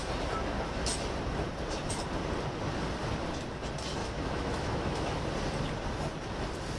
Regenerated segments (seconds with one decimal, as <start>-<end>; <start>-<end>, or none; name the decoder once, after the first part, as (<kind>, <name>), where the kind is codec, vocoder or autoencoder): 4.0-5.2 (autoencoder, DAC-VAE)